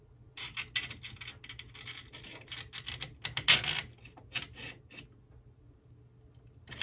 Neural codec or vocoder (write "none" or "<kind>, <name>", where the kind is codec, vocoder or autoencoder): none